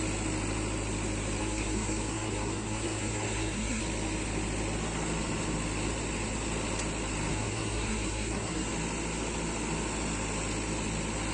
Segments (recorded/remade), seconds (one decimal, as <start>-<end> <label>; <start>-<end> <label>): 0.0-1.4 recorded; 1.4-3.8 remade; 3.8-7.3 recorded; 7.3-8.7 remade; 8.7-11.3 recorded